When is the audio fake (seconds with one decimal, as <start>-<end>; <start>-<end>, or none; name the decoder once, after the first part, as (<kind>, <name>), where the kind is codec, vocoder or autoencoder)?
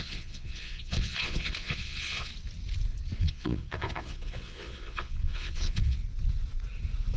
0.0-2.3 (vocoder, Vocos); 3.2-6.0